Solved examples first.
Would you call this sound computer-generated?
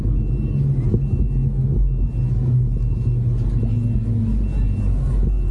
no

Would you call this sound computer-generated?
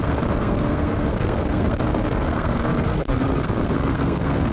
yes